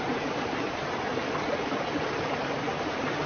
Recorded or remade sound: recorded